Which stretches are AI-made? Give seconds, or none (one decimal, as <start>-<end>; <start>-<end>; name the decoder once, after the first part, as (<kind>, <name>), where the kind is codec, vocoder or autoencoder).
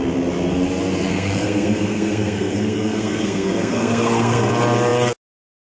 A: 1.1-4.5 (codec, SNAC)